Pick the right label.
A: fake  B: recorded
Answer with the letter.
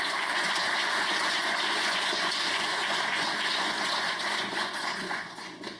A